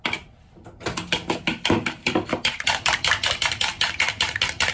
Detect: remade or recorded recorded